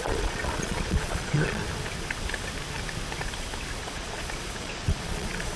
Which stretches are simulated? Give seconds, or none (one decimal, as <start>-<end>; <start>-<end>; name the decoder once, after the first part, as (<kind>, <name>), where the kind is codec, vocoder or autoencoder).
0.0-1.6 (vocoder, Vocos); 3.8-5.6